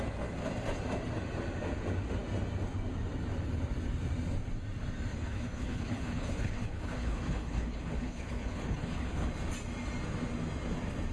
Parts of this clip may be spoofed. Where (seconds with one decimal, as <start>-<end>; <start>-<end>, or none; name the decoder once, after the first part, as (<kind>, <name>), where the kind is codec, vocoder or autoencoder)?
5.1-9.3 (codec, HILCodec)